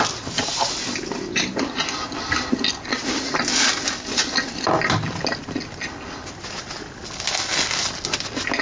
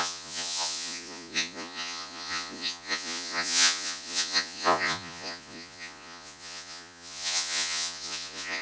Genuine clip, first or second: first